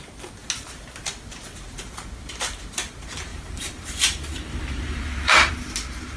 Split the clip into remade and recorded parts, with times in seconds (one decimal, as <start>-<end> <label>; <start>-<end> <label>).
0.0-3.3 recorded; 3.3-5.5 remade; 5.5-6.2 recorded